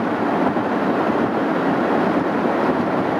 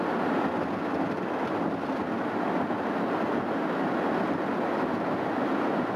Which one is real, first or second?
second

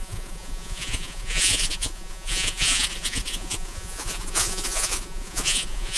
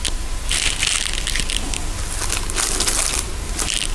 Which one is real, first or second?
second